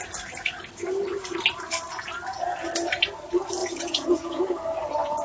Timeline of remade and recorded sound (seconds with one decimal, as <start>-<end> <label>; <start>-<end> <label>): 0.0-3.6 recorded; 3.6-4.4 remade; 4.4-5.2 recorded